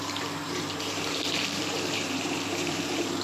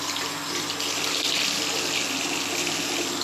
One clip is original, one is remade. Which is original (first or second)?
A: second